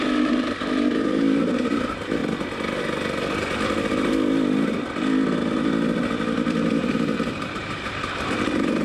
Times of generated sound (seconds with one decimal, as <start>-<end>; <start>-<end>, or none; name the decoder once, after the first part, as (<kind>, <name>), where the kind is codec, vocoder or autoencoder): 0.0-2.2 (vocoder, BigVGAN v2); 6.9-8.8

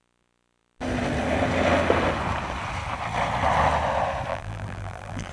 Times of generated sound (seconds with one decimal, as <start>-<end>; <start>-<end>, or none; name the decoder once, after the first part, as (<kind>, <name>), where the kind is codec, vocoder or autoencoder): 4.3-5.3 (vocoder, BigVGAN v2)